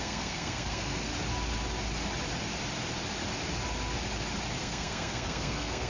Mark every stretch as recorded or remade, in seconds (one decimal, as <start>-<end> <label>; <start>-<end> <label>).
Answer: 0.0-1.1 remade; 1.1-4.6 recorded; 4.6-5.9 remade